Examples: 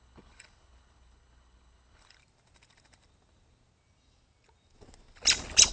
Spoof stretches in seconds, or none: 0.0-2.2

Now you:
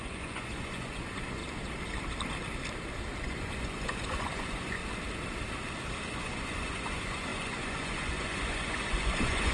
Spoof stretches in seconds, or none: 0.0-1.4; 3.2-4.8; 6.1-9.5

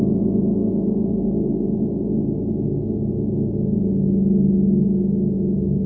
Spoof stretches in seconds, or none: 0.6-1.8

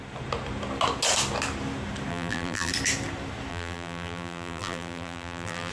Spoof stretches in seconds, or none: 2.1-2.7; 3.5-5.7